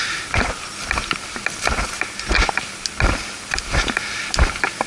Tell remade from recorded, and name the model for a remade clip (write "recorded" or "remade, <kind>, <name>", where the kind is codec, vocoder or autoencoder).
recorded